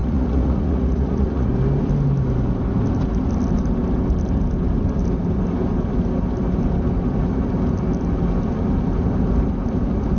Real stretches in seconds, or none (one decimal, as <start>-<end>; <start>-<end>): 1.5-10.2